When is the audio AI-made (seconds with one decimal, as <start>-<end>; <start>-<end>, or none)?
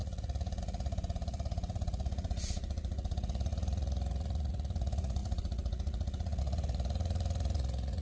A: 0.0-8.0